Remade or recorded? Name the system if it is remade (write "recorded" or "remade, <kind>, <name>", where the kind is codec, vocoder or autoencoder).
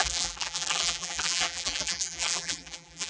remade, vocoder, BigVGAN v2